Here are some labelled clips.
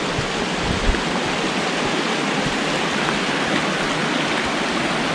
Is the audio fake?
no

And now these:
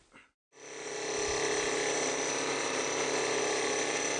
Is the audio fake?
no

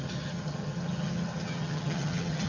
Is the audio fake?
yes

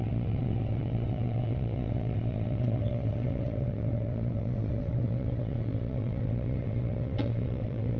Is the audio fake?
yes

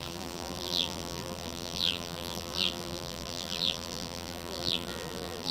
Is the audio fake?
yes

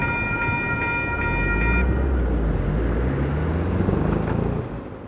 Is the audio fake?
no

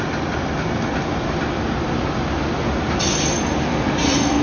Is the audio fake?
no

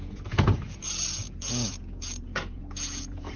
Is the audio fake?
yes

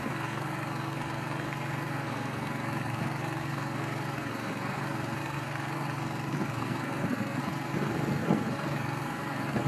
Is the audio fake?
yes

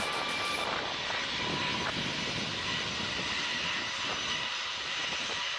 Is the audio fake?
no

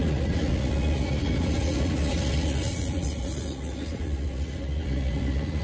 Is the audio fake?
yes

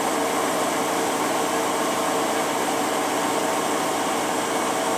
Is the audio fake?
no